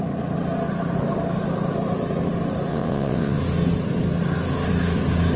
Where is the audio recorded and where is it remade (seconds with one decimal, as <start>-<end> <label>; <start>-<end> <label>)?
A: 0.0-2.7 recorded; 2.7-3.4 remade; 3.4-5.4 recorded